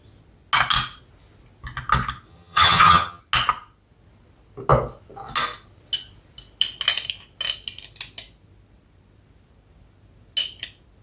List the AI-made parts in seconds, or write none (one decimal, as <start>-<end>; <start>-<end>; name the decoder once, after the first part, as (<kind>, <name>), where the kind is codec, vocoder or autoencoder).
2.3-3.2 (vocoder, HiFi-GAN)